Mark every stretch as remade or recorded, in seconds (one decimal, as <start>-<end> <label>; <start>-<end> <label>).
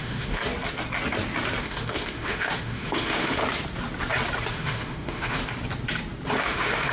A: 0.0-0.4 remade; 0.4-1.6 recorded; 1.6-3.4 remade; 3.4-4.5 recorded; 4.5-5.4 remade; 5.4-6.4 recorded; 6.4-6.9 remade